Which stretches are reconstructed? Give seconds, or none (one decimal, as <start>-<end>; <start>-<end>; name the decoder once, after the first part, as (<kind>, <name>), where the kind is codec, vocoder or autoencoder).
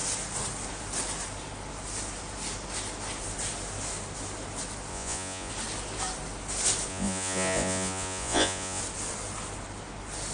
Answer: 4.9-5.5 (vocoder, Vocos); 6.9-8.8